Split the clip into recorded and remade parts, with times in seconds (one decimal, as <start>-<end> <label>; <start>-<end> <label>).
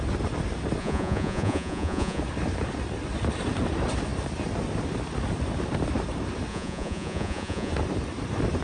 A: 0.0-0.8 recorded; 0.8-2.2 remade; 2.2-6.5 recorded; 6.5-7.7 remade; 7.7-8.6 recorded